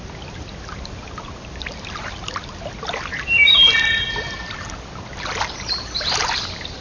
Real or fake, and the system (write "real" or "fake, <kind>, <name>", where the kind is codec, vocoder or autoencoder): real